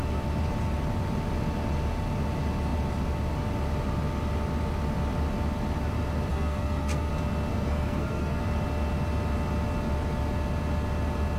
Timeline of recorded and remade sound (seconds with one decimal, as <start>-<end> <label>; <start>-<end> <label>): 0.0-6.3 recorded; 6.3-7.1 remade; 7.1-7.5 recorded; 7.5-8.4 remade; 8.4-11.4 recorded